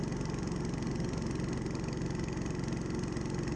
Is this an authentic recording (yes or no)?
yes